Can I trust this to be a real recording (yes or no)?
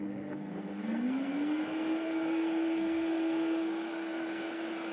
no